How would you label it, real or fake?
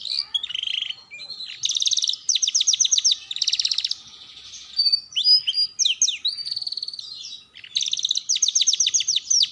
real